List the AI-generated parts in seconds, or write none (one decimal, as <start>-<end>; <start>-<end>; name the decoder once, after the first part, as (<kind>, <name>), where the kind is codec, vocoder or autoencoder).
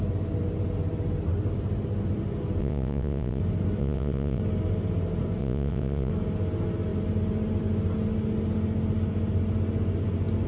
2.6-3.4 (vocoder, WaveNeXt); 3.8-4.4; 5.4-6.1